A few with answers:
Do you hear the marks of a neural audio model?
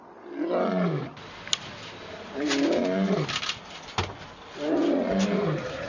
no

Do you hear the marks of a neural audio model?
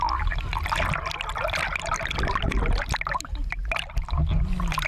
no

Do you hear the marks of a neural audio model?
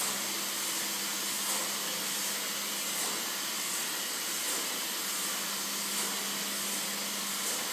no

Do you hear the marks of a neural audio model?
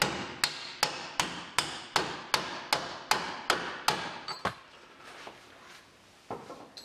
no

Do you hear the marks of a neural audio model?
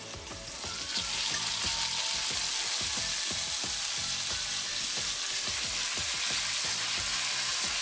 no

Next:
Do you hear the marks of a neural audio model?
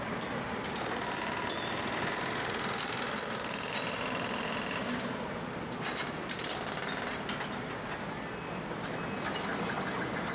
no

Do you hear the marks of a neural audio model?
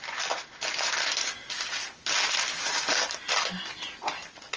no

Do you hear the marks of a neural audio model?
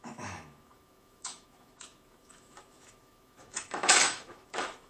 yes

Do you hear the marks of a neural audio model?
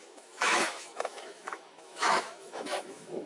yes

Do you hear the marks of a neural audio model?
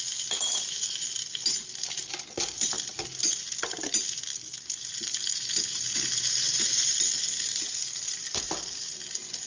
no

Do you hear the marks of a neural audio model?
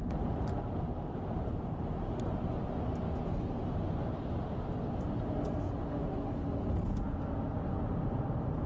no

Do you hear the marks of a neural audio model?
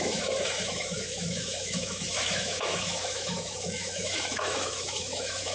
yes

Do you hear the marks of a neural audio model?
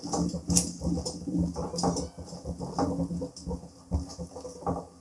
no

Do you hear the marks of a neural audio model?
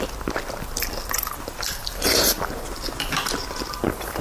no